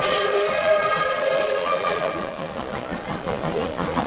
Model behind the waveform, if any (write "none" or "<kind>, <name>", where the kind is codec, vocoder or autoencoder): vocoder, Vocos